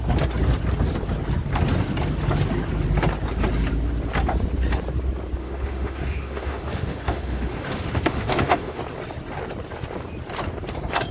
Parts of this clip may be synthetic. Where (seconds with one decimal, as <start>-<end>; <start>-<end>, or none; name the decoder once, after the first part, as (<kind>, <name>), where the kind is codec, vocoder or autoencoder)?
5.4-8.8 (autoencoder, DAC-VAE)